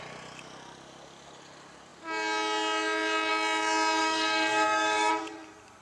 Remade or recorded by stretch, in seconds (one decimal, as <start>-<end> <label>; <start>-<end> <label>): 0.0-4.0 recorded; 4.0-5.1 remade; 5.1-5.8 recorded